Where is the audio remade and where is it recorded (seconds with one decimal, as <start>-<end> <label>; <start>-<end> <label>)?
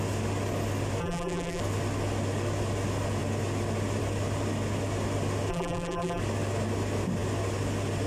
0.0-1.0 recorded; 1.0-1.6 remade; 1.6-5.5 recorded; 5.5-6.2 remade; 6.2-8.1 recorded